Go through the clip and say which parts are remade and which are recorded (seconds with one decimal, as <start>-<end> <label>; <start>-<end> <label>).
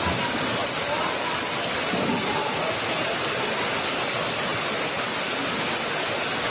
0.0-6.5 recorded